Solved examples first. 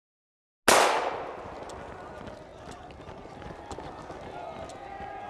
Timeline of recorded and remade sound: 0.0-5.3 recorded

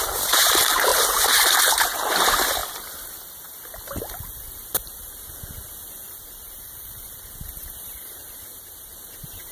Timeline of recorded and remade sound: 0.0-2.6 remade; 2.6-4.5 recorded; 4.5-9.5 remade

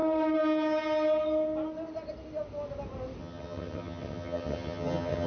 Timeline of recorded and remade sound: 0.0-3.2 recorded; 3.2-5.3 remade

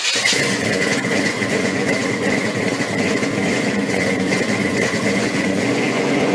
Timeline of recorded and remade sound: 0.0-6.3 remade